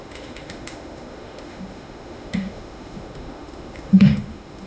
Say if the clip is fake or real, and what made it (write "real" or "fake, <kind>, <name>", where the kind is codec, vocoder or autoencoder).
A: fake, autoencoder, DAC-VAE